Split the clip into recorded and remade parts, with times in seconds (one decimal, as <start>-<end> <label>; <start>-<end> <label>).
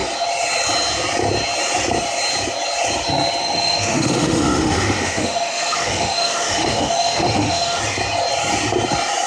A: 0.0-3.4 recorded; 3.4-7.8 remade; 7.8-9.3 recorded